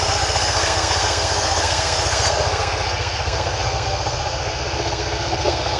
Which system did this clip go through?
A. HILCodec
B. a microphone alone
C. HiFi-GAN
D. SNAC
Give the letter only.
D